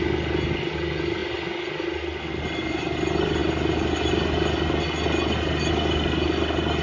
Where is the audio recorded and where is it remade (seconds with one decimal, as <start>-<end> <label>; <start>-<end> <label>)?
0.0-6.8 recorded